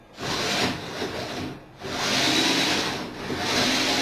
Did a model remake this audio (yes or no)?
no